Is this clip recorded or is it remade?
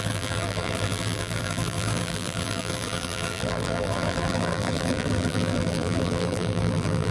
remade